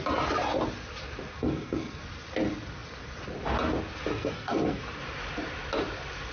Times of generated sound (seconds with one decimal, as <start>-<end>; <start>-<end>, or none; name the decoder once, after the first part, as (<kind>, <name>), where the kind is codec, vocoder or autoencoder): 1.4-2.0 (codec, SNAC); 4.1-4.8